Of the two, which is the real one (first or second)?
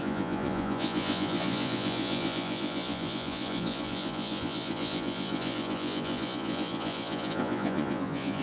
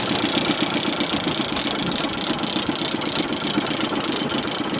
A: second